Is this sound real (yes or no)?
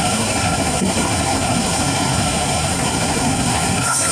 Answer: no